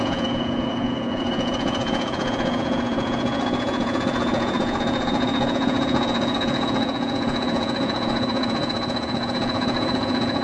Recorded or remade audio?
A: remade